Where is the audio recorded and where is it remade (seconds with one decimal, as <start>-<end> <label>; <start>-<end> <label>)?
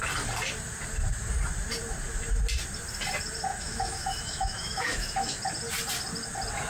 0.0-3.5 recorded; 3.5-5.4 remade; 5.4-6.7 recorded